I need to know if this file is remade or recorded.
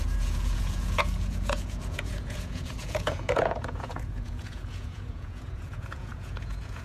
remade